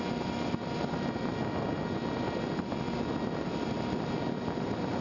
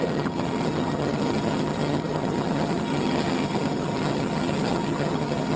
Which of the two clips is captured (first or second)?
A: first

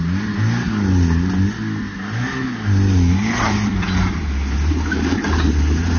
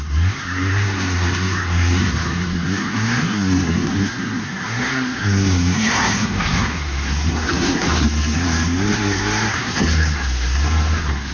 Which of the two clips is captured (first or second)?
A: first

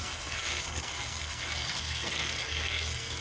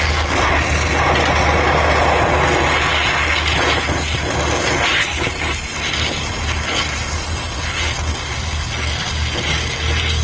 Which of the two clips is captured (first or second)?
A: second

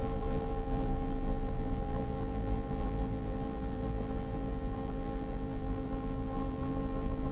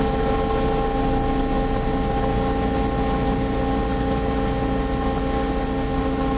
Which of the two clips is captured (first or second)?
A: second